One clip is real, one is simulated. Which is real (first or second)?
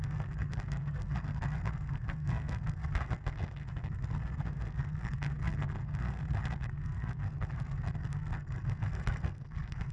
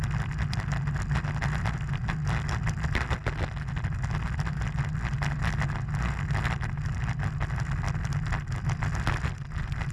second